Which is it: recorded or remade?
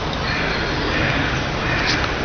recorded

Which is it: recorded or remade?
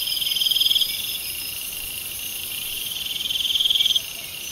remade